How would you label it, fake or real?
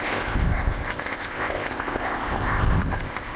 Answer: fake